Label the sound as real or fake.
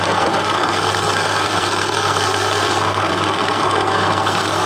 fake